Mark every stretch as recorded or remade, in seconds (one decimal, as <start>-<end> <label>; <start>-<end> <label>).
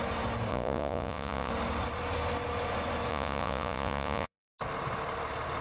0.0-0.5 recorded; 0.5-1.5 remade; 1.5-3.1 recorded; 3.1-4.5 remade; 4.5-5.6 recorded